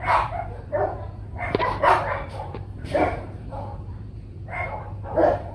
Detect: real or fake fake